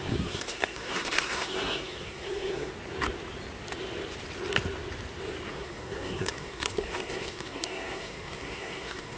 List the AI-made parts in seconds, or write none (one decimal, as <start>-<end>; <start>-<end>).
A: 0.0-2.7; 5.5-9.2